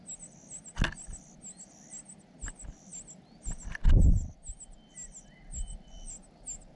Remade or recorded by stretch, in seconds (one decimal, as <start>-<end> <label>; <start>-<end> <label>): 0.0-6.8 recorded

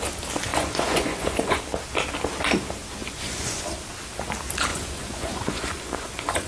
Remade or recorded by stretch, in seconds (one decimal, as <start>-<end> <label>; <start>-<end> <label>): 0.0-0.5 recorded; 0.5-1.6 remade; 1.6-3.0 recorded; 3.0-3.9 remade; 3.9-4.7 recorded; 4.7-6.5 remade

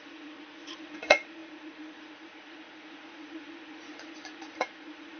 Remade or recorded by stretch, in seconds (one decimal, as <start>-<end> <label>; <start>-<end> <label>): 0.0-5.2 remade

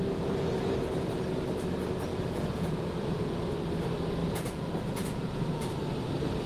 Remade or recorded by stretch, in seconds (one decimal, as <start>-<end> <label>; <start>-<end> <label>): 0.0-2.1 recorded; 2.1-3.4 remade; 3.4-4.2 recorded; 4.2-5.7 remade; 5.7-6.5 recorded

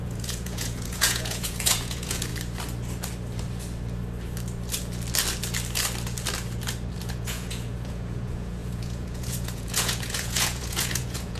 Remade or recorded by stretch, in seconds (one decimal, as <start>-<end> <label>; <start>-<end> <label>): 0.0-2.3 remade; 2.3-7.0 recorded; 7.0-11.4 remade

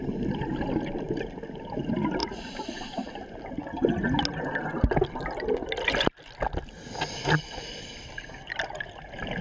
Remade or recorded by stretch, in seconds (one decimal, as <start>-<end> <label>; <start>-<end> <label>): 0.0-2.2 recorded; 2.2-3.1 remade; 3.1-9.4 recorded